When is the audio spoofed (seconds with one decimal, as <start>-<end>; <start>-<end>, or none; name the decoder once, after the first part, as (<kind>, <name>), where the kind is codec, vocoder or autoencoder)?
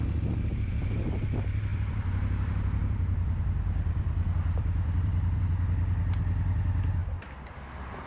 1.7-5.4 (vocoder, BigVGAN v2)